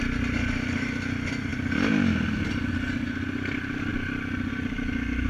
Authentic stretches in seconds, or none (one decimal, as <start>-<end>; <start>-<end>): 0.0-5.3

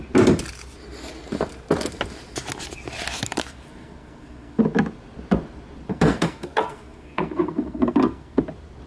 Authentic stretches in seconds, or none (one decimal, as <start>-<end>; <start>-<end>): 0.0-3.4; 4.6-5.9; 8.4-8.9

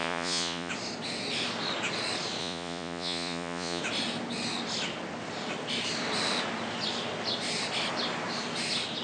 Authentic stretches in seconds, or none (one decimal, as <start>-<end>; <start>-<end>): 0.7-2.4; 3.8-9.0

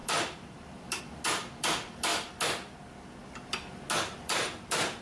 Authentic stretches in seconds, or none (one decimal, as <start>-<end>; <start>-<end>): 0.0-5.0

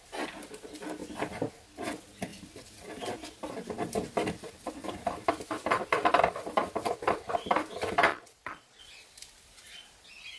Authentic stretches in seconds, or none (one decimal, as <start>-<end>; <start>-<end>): 0.0-8.1; 8.8-10.4